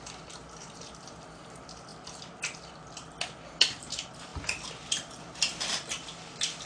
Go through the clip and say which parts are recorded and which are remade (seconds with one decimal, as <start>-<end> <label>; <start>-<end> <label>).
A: 0.0-4.3 remade; 4.3-5.7 recorded; 5.7-6.7 remade